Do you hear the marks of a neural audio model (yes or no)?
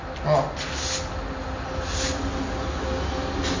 no